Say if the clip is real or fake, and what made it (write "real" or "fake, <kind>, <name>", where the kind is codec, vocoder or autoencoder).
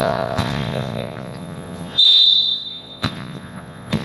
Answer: fake, vocoder, Vocos